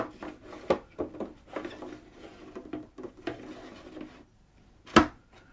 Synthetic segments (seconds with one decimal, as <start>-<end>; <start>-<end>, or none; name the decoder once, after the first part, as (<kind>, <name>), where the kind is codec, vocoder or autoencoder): none